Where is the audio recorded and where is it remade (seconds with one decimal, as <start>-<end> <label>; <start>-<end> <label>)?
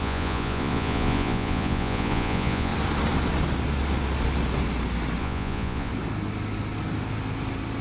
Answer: 0.0-2.7 remade; 2.7-5.2 recorded; 5.2-5.9 remade; 5.9-7.8 recorded